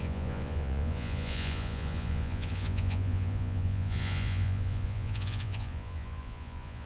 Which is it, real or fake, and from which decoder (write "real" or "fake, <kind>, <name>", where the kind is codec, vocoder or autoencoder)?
fake, vocoder, Vocos